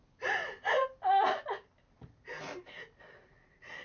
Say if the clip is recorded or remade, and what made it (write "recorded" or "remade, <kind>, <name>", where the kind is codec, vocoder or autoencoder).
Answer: recorded